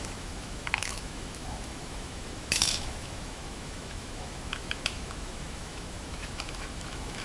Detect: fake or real fake